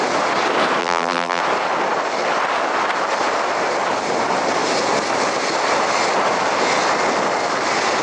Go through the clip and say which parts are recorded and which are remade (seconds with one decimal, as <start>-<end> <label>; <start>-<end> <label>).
0.0-0.8 recorded; 0.8-1.4 remade; 1.4-8.0 recorded